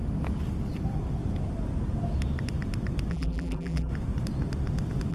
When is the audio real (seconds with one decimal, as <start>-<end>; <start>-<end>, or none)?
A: 0.0-3.1; 3.9-5.1